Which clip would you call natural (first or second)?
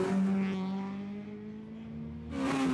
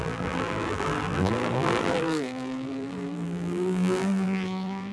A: first